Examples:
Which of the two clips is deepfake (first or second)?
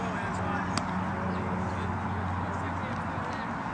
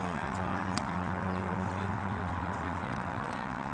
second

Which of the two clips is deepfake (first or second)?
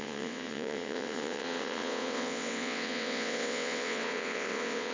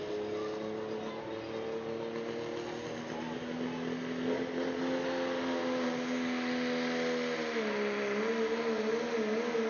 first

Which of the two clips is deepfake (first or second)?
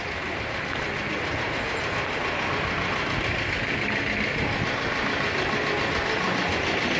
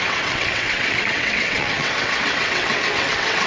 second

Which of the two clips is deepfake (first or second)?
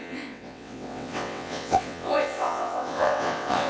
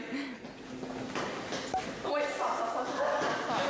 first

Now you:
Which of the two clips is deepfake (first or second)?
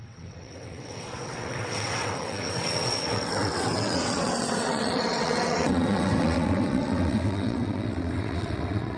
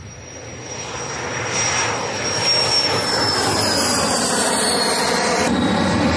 first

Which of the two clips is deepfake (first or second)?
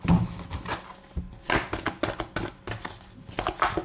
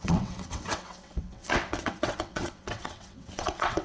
second